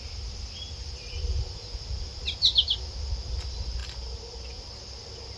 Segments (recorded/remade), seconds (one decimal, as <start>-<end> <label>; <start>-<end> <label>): 0.0-5.4 recorded